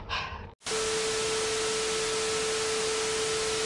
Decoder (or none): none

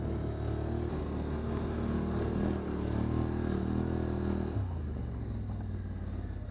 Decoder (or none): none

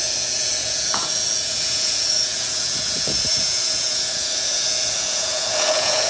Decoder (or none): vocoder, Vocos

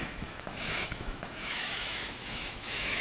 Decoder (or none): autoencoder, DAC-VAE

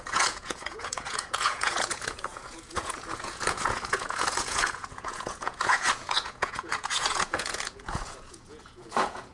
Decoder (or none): vocoder, Vocos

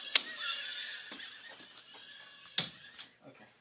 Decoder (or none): none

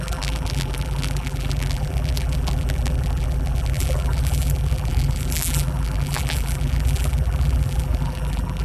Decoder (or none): vocoder, BigVGAN v2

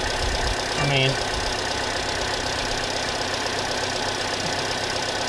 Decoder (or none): none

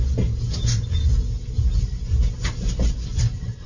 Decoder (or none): none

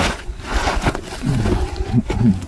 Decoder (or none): vocoder, Vocos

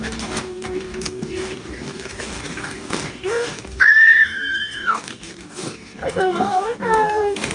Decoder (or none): codec, DAC